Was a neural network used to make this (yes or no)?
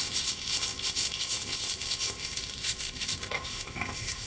yes